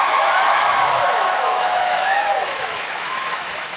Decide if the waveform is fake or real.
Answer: fake